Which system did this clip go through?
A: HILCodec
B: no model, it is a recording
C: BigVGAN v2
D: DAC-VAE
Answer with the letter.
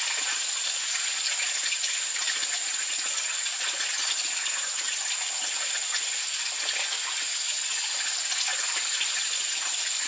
B